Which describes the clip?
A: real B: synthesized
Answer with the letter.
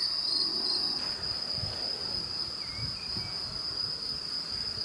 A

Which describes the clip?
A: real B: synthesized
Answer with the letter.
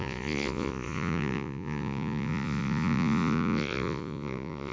B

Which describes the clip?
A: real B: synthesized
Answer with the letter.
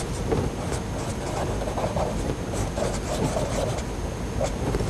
A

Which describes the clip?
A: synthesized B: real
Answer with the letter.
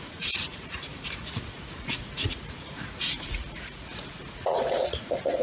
A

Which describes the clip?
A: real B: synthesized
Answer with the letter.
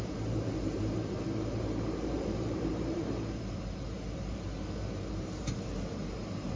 B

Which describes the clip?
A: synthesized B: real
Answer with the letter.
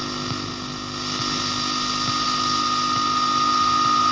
B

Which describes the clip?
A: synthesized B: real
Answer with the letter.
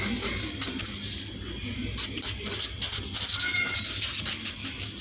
B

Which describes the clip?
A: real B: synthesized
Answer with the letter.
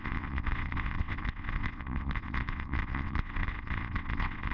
B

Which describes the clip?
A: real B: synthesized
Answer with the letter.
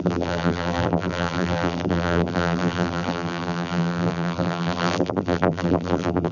B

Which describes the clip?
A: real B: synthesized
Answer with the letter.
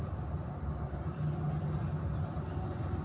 A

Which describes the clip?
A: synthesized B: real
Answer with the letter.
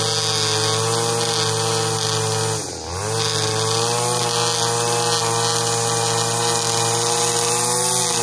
B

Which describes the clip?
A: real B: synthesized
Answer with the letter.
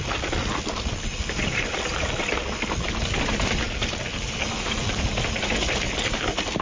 A